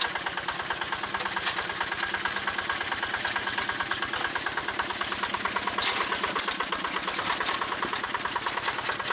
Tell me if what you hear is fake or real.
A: real